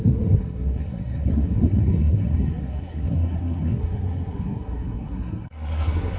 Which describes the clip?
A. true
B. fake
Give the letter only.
B